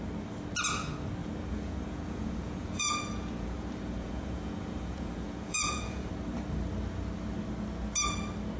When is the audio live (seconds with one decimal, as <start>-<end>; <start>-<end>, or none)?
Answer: 0.0-1.2; 6.1-8.6